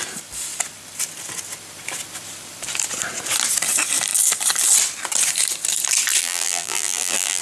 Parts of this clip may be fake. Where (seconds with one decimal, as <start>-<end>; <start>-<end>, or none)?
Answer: 6.2-7.4